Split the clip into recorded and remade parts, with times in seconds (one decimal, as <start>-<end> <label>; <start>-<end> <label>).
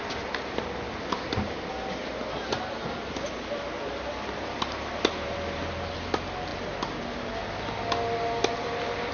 0.0-9.1 recorded